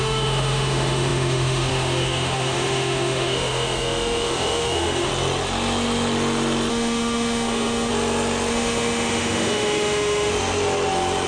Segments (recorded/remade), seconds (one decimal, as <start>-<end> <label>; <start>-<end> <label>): 0.0-5.1 remade; 5.1-6.7 recorded; 6.7-7.9 remade; 7.9-8.5 recorded; 8.5-10.3 remade; 10.3-11.3 recorded